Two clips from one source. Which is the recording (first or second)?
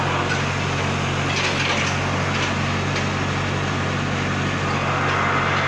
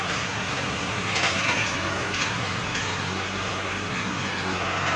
first